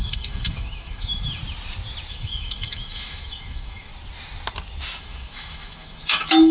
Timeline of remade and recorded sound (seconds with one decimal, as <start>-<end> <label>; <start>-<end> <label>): 0.0-1.4 remade; 1.4-2.1 recorded; 2.1-3.9 remade; 3.9-5.0 recorded; 5.0-6.5 remade